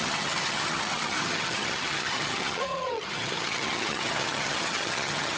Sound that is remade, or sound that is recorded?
remade